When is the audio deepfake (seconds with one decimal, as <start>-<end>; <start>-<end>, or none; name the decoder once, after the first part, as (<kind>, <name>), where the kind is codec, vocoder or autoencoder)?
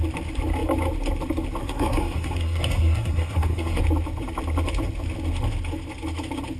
1.6-3.8 (codec, SNAC)